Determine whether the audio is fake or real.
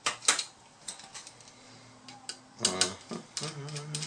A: real